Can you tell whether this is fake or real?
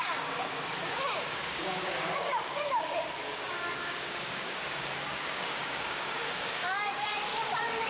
fake